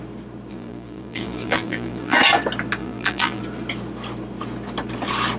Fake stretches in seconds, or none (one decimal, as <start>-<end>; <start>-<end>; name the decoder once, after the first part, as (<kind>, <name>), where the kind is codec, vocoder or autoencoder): 0.5-2.2 (vocoder, BigVGAN v2); 2.8-3.4